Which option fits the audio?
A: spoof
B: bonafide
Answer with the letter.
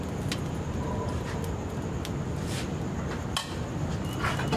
B